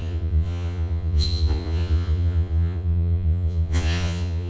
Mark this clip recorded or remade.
remade